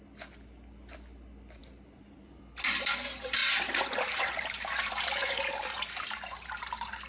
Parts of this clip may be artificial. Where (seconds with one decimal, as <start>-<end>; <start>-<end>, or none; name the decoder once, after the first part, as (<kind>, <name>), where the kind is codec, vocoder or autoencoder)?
1.6-2.4 (vocoder, BigVGAN v2); 3.4-7.1